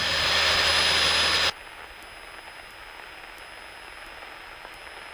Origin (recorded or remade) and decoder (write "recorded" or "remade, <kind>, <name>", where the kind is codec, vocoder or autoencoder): recorded